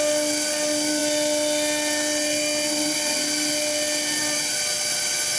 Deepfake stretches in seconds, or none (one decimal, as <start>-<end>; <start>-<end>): none